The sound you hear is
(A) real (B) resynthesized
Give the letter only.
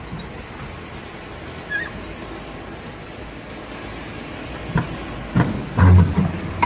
A